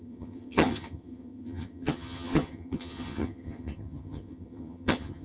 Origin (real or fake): fake